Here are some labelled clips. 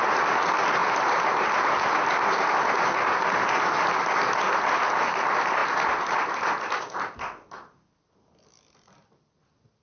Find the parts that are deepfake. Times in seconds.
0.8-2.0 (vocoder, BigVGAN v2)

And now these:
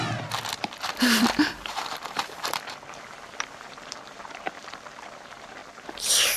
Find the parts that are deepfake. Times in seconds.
0.0-5.6 (vocoder, BigVGAN v2)

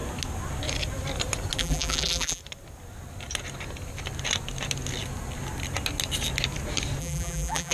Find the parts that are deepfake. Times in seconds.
1.6-2.4 (vocoder, BigVGAN v2); 7.0-7.7

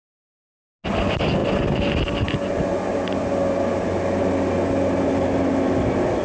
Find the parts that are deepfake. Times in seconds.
none

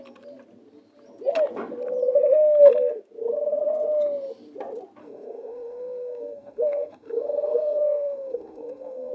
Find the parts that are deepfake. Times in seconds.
5.0-9.1 (codec, SNAC)

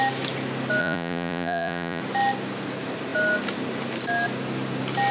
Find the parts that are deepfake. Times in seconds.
0.8-2.0 (vocoder, Vocos)

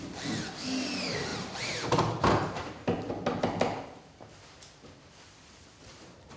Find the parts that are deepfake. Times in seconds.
1.3-3.1 (vocoder, BigVGAN v2); 5.9-6.4

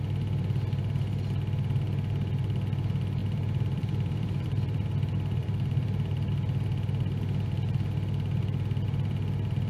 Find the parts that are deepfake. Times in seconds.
3.2-6.3 (vocoder, BigVGAN v2)